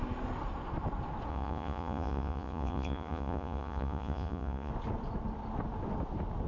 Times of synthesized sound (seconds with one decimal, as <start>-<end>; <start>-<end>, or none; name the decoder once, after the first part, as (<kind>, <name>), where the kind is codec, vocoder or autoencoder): 1.3-4.7 (vocoder, Vocos)